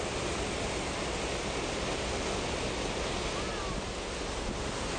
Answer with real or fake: real